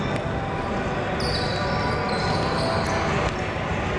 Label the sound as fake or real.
real